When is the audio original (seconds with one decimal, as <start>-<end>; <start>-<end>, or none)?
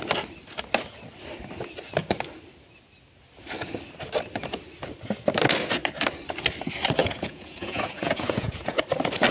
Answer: 0.0-7.0; 8.8-9.3